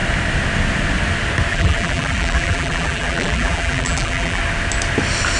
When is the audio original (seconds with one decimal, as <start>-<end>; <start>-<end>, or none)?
0.0-1.5; 4.4-5.4